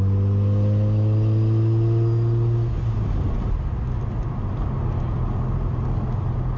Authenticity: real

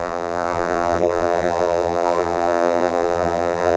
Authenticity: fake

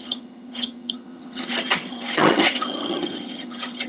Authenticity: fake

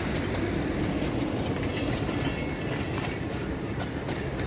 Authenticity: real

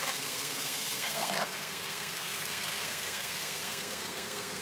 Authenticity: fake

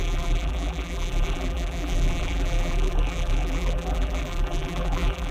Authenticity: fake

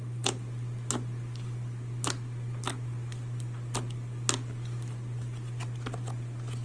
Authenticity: real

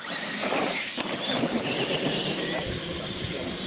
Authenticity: fake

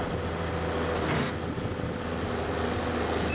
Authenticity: real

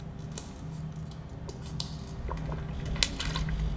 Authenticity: real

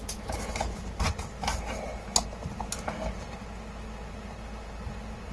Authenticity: real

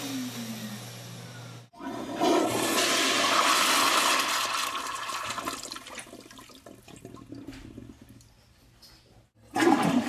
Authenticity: real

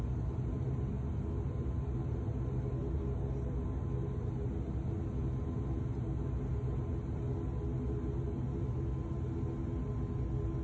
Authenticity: real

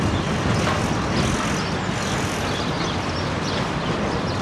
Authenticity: real